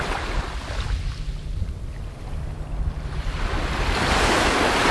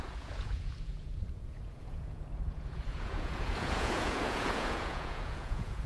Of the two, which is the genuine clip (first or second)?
first